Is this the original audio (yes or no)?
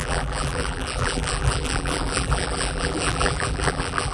no